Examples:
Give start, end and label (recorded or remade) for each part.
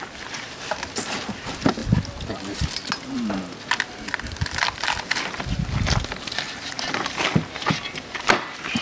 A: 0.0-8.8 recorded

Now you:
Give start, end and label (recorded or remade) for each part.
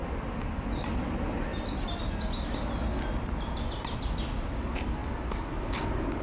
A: 0.0-6.2 recorded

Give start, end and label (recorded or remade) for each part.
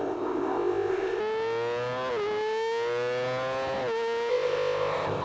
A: 0.0-1.2 remade; 1.2-4.3 recorded; 4.3-5.2 remade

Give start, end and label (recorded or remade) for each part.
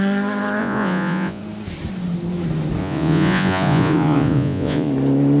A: 0.0-0.6 recorded; 0.6-1.4 remade; 1.4-2.8 recorded; 2.8-4.9 remade; 4.9-5.4 recorded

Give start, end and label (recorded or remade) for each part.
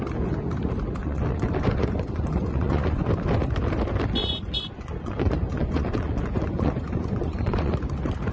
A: 0.0-1.0 recorded; 1.0-3.1 remade; 3.1-4.2 recorded; 4.2-7.7 remade; 7.7-8.3 recorded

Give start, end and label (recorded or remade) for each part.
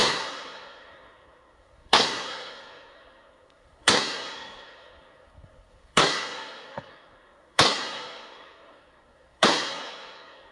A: 0.0-10.5 remade